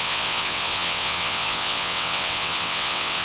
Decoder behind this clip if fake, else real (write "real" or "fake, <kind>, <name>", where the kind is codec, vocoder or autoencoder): fake, vocoder, WaveNeXt